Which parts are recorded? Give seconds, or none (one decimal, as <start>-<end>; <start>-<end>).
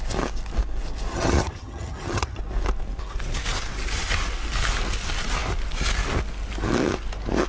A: 0.0-1.1; 2.4-7.5